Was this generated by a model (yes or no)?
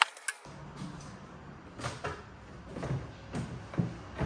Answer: no